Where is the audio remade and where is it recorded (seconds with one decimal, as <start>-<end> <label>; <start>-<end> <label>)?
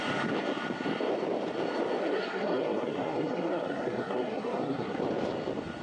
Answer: 0.0-2.0 recorded; 2.0-5.0 remade; 5.0-5.8 recorded